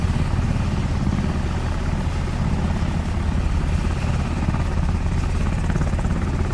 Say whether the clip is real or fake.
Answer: real